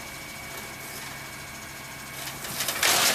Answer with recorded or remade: recorded